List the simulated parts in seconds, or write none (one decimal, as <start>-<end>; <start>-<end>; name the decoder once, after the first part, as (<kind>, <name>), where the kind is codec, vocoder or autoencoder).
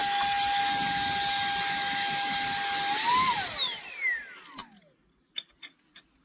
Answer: none